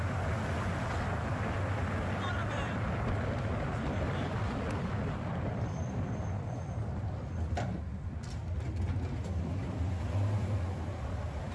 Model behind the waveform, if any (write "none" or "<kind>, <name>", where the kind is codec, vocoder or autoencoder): none